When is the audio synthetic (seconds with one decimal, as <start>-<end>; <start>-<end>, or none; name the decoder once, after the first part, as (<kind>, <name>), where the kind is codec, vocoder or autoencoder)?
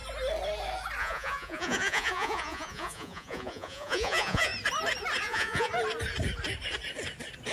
1.0-4.5 (vocoder, Vocos); 5.2-5.7